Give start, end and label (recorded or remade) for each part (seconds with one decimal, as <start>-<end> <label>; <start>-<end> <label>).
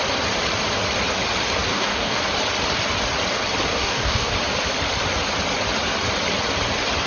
0.0-1.7 recorded; 1.7-2.2 remade; 2.2-3.7 recorded; 3.7-4.3 remade; 4.3-7.1 recorded